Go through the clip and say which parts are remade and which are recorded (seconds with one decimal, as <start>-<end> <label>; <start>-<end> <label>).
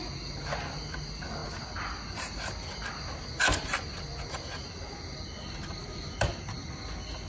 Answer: 0.0-7.3 recorded